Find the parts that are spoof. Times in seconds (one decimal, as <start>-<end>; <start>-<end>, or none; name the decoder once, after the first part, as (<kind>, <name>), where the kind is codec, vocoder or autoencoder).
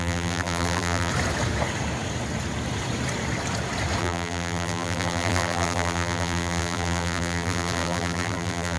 0.0-1.1 (vocoder, BigVGAN v2); 4.0-8.8